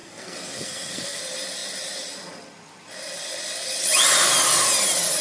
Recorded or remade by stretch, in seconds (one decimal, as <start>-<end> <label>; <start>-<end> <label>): 0.0-1.2 remade; 1.2-5.2 recorded